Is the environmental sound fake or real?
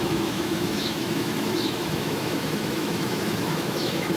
fake